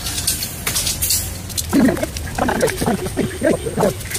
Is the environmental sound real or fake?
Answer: real